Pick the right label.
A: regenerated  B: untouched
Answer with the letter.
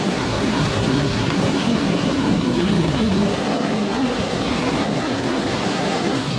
A